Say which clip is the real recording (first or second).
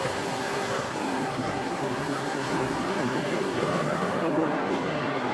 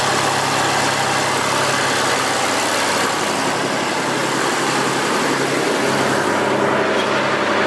second